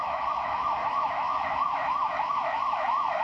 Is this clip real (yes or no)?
no